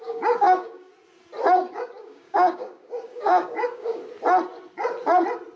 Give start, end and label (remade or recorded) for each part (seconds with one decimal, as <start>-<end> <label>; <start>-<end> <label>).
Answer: 0.0-0.9 remade; 0.9-1.7 recorded; 1.7-4.0 remade; 4.0-5.6 recorded